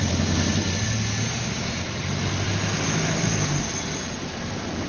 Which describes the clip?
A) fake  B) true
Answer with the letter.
B